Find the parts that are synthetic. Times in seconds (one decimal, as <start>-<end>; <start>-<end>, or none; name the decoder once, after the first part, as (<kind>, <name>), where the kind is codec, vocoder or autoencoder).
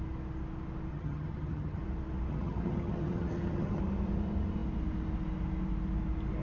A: 0.9-1.8 (vocoder, HiFi-GAN); 2.3-3.8